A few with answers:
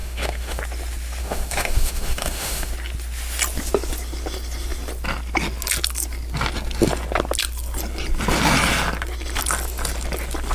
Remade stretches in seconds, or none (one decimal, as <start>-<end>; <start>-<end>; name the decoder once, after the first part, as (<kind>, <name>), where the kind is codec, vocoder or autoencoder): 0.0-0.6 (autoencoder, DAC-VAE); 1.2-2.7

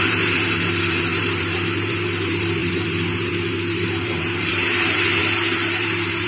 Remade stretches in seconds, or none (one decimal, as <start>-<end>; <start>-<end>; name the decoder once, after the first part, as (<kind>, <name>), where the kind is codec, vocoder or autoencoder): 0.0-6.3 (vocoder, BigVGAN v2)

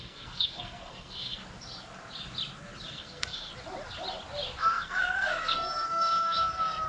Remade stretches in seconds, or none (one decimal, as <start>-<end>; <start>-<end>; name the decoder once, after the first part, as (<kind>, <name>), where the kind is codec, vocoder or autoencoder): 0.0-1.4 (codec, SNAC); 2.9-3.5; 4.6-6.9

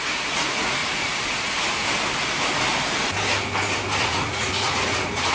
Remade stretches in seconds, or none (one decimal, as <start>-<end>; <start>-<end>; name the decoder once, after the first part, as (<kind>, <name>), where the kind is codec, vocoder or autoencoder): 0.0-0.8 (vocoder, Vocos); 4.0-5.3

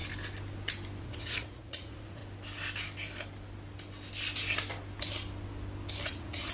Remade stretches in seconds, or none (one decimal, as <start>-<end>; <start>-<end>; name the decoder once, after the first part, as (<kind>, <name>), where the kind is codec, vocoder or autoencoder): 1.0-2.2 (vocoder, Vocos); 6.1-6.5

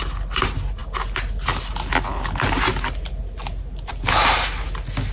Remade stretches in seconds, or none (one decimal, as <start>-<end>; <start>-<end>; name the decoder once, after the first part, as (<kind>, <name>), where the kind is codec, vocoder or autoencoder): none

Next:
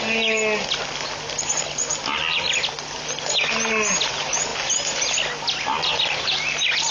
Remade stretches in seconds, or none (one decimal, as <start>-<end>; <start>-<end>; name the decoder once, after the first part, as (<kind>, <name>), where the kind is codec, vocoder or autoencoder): none